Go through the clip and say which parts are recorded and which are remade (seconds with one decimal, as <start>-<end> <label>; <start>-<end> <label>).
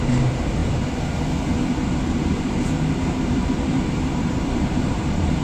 0.0-5.4 remade